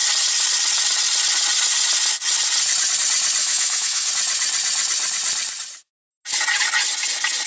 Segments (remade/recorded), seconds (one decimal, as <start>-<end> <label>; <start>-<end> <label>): 0.0-3.4 recorded; 3.4-4.1 remade; 4.1-7.5 recorded